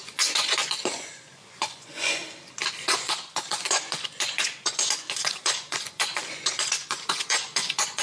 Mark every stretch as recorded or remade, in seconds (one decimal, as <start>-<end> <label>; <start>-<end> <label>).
0.0-2.2 remade; 2.2-2.8 recorded; 2.8-8.0 remade